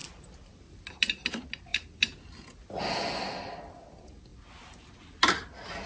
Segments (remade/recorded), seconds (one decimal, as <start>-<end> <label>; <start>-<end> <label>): 0.0-5.9 recorded